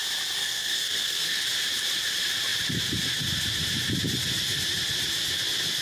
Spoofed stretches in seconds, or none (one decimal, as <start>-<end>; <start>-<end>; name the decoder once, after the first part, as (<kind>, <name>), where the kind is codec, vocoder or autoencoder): 0.4-1.4 (codec, SNAC)